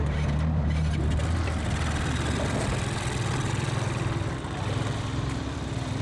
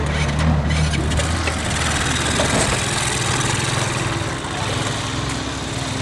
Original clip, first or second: second